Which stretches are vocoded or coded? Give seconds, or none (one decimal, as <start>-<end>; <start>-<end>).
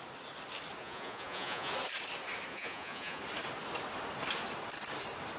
0.8-1.7; 2.5-3.2